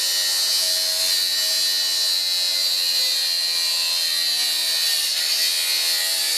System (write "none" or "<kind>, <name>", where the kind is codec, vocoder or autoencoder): none